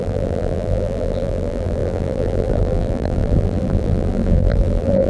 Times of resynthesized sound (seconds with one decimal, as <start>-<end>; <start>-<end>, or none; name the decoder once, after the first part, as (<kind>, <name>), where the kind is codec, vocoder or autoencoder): 0.0-5.1 (vocoder, BigVGAN v2)